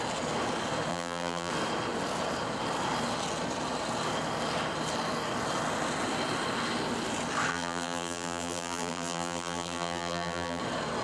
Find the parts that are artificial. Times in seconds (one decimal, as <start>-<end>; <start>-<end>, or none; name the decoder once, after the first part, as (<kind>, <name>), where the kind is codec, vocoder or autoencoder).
0.9-1.5 (vocoder, BigVGAN v2); 7.5-10.6